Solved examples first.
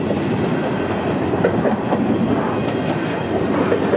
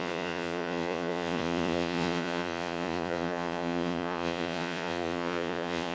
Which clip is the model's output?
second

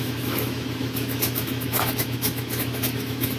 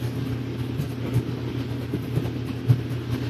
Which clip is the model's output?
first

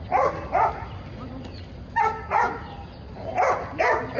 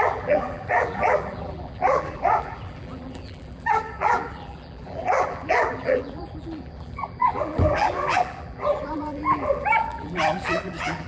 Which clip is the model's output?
second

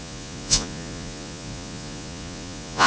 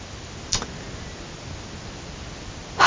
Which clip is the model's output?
first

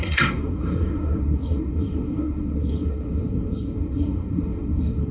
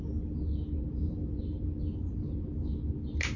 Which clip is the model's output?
first